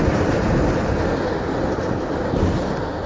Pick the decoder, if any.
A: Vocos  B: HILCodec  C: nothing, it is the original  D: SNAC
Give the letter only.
C